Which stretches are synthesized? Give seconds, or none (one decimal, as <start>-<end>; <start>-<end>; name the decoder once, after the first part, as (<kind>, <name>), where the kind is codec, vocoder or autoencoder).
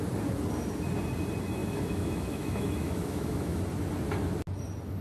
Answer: 1.6-3.6 (autoencoder, DAC-VAE)